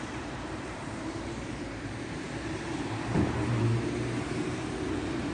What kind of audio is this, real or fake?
fake